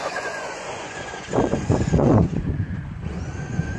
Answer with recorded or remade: remade